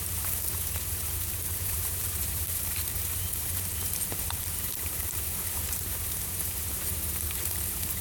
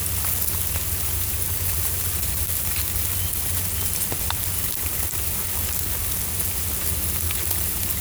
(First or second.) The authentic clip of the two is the second